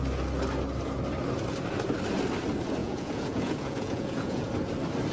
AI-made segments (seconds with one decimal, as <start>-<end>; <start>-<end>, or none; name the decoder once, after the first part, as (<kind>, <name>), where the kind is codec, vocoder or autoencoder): 2.8-4.5 (vocoder, Vocos)